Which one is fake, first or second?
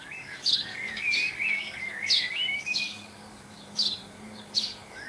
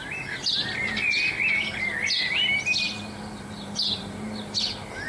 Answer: first